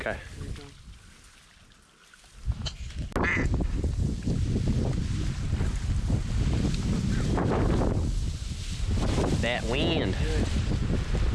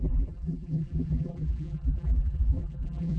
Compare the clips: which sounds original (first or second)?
first